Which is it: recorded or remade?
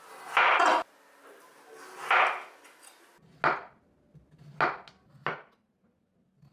recorded